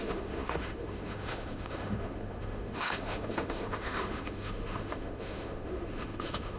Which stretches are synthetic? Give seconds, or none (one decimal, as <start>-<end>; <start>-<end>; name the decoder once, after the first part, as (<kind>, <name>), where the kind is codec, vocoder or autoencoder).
0.0-6.6 (autoencoder, DAC-VAE)